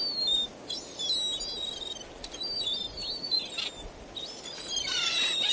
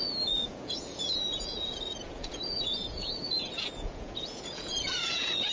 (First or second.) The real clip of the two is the first